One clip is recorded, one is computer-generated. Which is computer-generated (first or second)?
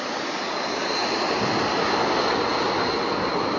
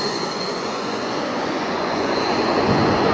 second